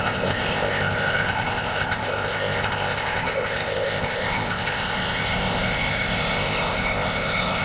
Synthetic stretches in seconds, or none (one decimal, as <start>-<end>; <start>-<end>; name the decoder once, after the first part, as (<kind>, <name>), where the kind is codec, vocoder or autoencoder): 0.0-7.6 (codec, ZipCodec)